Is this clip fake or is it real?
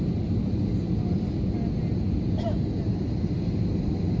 real